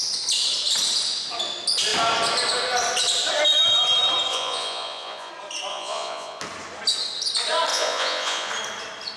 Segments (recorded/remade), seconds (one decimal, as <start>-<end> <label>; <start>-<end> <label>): 0.0-4.3 recorded; 4.3-5.3 remade; 5.3-5.7 recorded; 5.7-6.4 remade; 6.4-7.7 recorded; 7.7-8.5 remade; 8.5-9.2 recorded